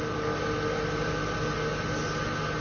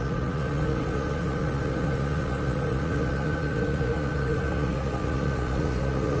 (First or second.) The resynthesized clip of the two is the second